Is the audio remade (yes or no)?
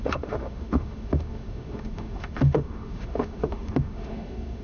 yes